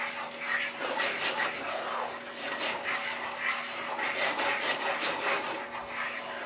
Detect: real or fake real